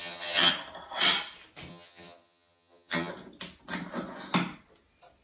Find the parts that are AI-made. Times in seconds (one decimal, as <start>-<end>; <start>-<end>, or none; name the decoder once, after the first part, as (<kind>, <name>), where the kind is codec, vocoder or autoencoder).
0.0-0.5 (vocoder, HiFi-GAN); 1.7-3.1

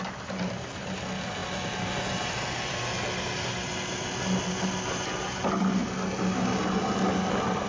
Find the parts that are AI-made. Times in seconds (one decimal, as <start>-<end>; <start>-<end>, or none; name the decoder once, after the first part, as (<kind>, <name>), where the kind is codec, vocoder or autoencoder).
none

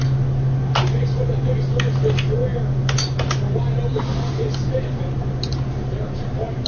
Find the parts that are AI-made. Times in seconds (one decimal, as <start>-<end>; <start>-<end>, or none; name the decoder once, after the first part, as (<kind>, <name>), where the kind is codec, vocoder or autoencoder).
none

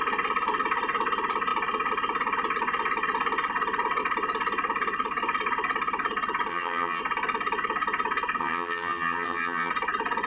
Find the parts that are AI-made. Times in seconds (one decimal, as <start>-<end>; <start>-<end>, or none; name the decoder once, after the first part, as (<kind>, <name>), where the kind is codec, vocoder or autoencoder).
6.5-7.0 (vocoder, HiFi-GAN); 8.4-9.7